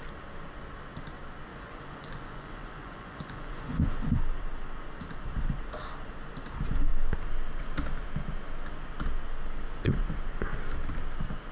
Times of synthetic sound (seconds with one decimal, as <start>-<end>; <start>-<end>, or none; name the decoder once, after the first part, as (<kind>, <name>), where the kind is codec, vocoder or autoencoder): 1.5-4.0 (vocoder, Vocos)